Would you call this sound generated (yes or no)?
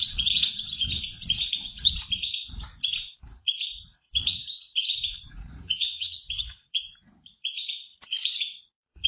yes